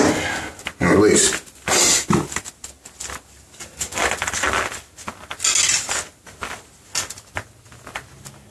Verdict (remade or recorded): recorded